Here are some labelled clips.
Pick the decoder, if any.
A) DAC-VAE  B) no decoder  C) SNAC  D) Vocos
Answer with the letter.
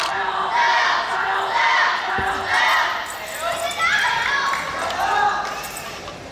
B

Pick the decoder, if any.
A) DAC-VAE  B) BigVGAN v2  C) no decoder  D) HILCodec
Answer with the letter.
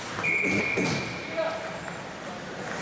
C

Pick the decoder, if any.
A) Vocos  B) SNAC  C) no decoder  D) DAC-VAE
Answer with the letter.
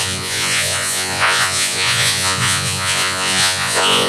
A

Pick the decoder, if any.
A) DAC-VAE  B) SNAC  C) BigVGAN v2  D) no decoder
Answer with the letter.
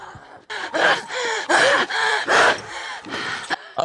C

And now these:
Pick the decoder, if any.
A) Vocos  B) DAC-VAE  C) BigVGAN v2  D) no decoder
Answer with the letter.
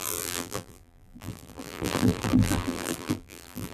C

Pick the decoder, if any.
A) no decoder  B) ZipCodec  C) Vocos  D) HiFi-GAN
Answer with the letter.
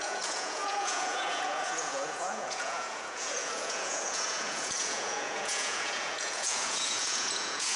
C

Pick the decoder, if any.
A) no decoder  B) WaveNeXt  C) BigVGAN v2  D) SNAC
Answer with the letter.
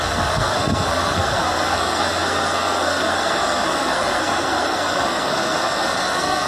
D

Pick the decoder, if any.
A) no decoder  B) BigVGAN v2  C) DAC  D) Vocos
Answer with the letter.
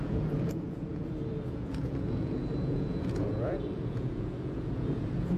D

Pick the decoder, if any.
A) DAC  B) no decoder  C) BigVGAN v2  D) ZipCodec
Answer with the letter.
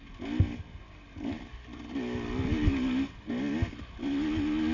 B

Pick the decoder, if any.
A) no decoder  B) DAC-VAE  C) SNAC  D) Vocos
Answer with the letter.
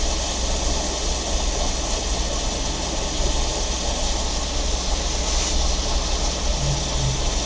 A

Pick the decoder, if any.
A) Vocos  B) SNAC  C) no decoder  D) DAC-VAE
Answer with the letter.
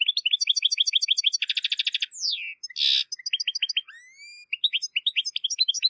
C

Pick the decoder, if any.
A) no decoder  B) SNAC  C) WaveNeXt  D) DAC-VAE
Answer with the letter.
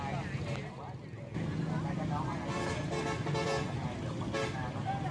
A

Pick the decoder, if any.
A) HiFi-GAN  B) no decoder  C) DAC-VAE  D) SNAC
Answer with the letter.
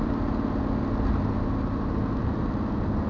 B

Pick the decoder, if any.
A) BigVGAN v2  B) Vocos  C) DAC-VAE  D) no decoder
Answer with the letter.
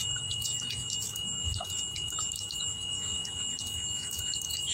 C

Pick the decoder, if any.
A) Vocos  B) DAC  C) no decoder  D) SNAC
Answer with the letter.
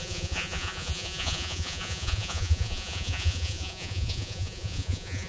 A